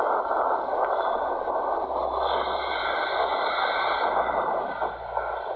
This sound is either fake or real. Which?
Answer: real